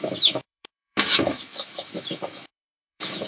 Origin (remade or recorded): remade